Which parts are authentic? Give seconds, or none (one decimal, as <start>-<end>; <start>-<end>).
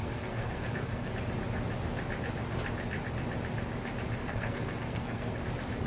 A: 1.1-4.2; 5.4-5.9